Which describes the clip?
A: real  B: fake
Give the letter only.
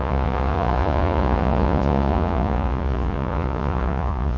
B